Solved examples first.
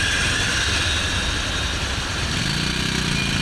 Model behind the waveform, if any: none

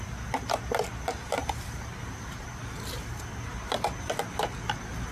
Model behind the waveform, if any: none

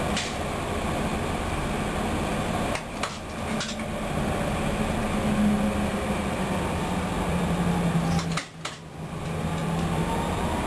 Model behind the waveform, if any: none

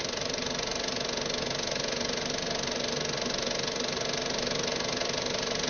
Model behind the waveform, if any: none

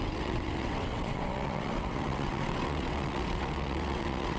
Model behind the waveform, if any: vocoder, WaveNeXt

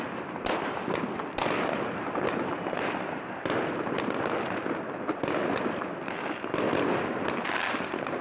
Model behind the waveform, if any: none